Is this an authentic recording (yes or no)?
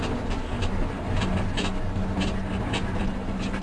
yes